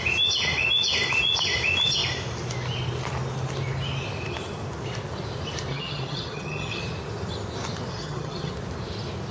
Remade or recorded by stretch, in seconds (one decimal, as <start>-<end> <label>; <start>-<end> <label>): 0.0-5.7 recorded; 5.7-6.8 remade; 6.8-7.9 recorded; 7.9-8.5 remade; 8.5-9.3 recorded